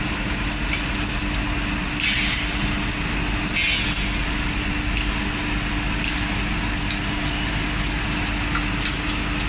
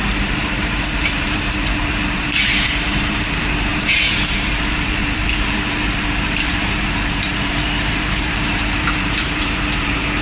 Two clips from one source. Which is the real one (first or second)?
first